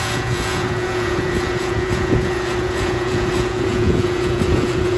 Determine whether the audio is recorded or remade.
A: remade